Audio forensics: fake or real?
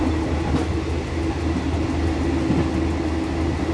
real